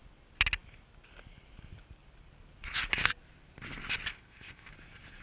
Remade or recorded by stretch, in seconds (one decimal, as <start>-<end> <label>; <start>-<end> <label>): 0.0-4.1 recorded; 4.1-4.7 remade; 4.7-5.2 recorded